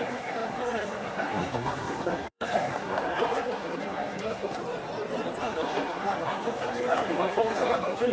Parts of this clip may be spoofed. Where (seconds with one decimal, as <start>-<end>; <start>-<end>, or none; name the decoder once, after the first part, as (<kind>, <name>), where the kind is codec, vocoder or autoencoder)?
0.0-4.6 (codec, SNAC); 5.4-8.1